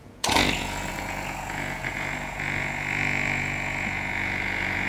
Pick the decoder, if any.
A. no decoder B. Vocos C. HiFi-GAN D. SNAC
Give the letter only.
B